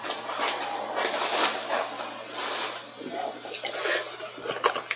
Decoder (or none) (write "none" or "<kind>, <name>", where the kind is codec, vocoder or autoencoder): none